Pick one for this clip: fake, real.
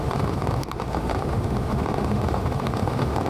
fake